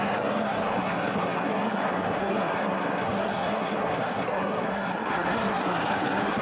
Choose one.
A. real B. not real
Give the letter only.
B